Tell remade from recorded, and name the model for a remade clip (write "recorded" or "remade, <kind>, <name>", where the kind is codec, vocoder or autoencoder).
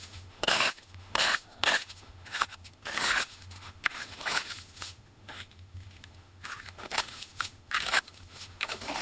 remade, autoencoder, DAC-VAE